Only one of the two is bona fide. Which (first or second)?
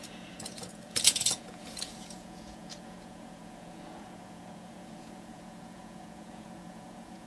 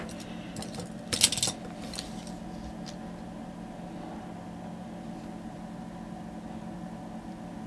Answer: second